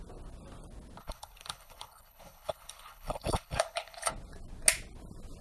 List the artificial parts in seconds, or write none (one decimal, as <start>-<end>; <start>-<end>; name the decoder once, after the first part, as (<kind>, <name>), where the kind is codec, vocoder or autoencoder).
1.0-4.1 (codec, HILCodec)